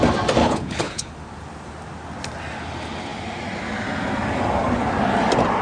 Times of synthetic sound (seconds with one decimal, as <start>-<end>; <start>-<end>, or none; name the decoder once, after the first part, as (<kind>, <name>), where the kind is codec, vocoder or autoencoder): 0.4-1.1 (codec, HILCodec)